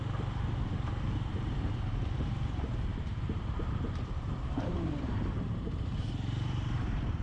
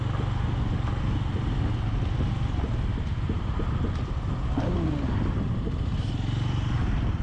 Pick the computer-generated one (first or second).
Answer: first